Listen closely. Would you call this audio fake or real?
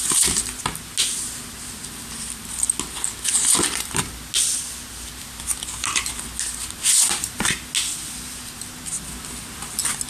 real